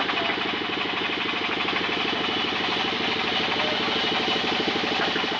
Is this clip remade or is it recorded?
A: recorded